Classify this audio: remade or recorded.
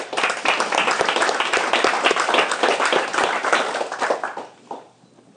recorded